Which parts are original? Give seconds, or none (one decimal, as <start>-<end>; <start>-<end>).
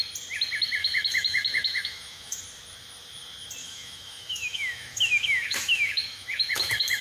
0.0-0.8; 2.4-3.6